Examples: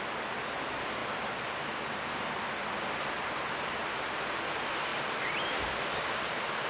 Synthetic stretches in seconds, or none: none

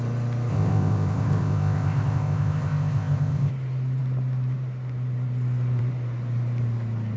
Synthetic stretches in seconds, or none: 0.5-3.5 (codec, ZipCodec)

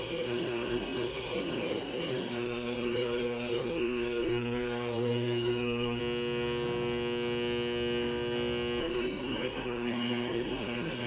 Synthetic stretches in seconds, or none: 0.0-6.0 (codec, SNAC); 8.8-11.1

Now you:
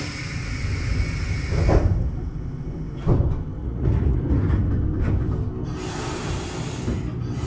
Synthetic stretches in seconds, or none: 3.6-4.2 (vocoder, Vocos)

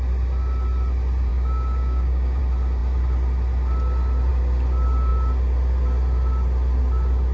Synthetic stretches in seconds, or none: 1.3-2.4 (codec, DAC)